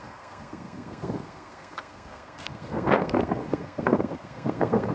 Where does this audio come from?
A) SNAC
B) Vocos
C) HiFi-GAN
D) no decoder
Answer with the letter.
A